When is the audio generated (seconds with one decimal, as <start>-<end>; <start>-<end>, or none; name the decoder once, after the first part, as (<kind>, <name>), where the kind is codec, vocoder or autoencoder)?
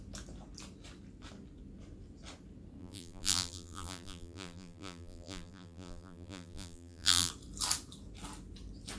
2.8-7.3 (vocoder, BigVGAN v2)